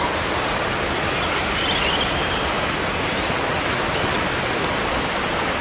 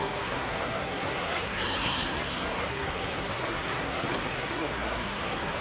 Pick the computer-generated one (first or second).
second